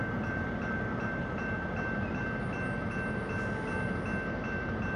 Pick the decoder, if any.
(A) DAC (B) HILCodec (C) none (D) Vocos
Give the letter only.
C